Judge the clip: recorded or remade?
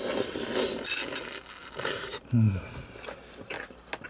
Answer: recorded